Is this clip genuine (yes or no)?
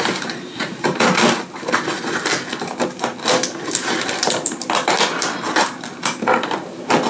yes